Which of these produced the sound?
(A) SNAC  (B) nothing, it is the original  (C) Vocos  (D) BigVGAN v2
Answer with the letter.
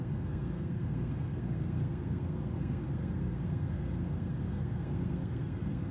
A